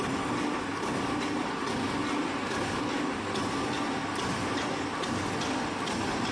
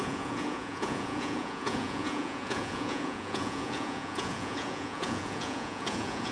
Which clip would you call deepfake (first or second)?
second